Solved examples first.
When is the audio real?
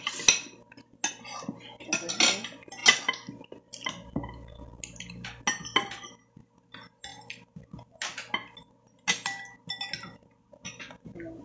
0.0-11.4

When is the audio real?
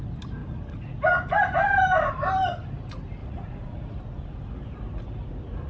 0.0-3.2; 4.0-5.7